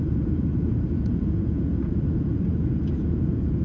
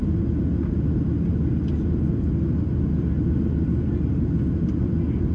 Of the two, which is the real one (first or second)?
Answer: second